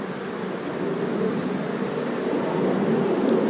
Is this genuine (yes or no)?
yes